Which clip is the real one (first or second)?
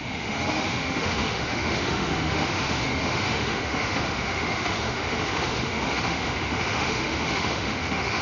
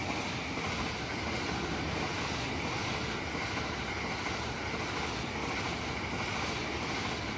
second